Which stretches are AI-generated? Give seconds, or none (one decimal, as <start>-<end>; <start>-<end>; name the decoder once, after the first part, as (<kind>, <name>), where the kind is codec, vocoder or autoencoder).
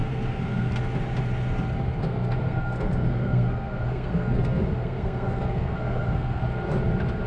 0.0-0.8 (codec, SNAC); 2.0-6.4